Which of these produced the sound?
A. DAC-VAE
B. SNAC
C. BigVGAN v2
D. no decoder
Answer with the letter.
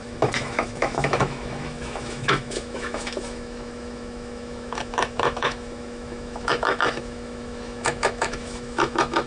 A